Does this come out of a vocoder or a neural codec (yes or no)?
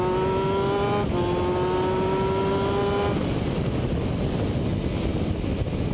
no